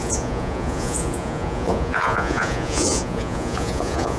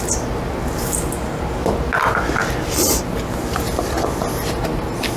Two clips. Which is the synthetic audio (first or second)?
first